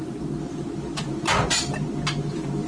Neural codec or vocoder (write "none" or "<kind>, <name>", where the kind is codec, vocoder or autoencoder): none